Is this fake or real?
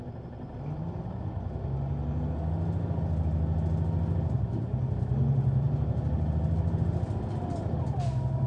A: real